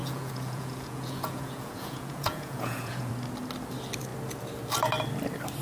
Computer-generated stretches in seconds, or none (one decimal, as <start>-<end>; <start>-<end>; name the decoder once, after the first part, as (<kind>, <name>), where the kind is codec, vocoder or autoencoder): 0.0-3.1 (vocoder, Vocos)